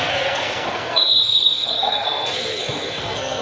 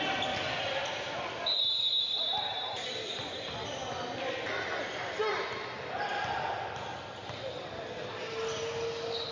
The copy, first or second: first